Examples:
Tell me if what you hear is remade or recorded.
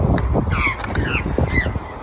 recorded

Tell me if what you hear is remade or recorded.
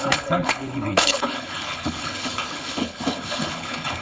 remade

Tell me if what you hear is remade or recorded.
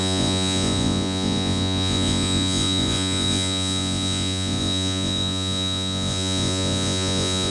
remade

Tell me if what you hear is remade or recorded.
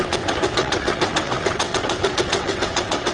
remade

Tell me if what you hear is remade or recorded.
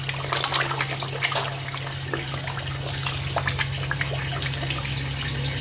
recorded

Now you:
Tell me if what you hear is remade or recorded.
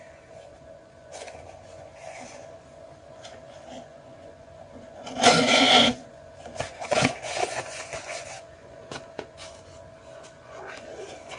remade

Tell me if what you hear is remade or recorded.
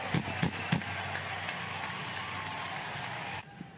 recorded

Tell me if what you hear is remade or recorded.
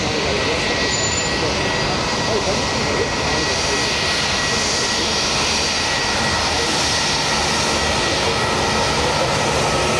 recorded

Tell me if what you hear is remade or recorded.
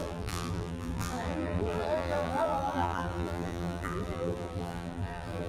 remade